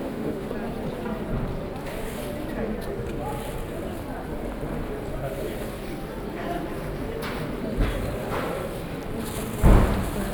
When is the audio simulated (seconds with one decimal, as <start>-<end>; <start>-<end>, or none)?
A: 0.0-0.5